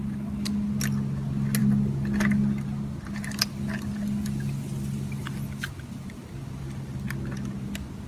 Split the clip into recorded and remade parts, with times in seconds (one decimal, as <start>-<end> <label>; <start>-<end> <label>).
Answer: 0.0-8.1 recorded